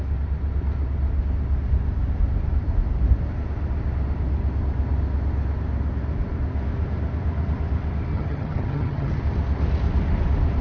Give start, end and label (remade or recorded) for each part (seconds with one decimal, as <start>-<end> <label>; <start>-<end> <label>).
0.0-8.1 recorded; 8.1-9.2 remade; 9.2-10.6 recorded